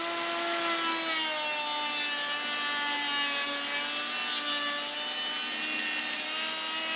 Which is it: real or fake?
real